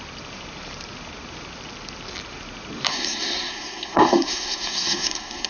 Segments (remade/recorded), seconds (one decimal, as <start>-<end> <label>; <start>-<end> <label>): 0.0-2.9 recorded; 2.9-5.5 remade